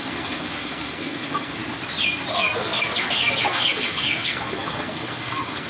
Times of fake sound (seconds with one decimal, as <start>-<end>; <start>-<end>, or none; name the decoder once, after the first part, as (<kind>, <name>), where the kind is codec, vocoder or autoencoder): 0.0-1.6 (codec, SNAC); 2.3-5.7